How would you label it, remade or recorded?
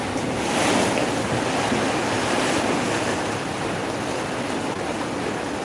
recorded